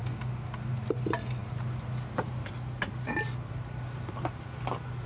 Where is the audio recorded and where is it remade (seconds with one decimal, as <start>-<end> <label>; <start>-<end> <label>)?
0.0-5.1 recorded